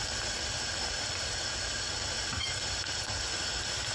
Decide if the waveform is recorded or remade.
recorded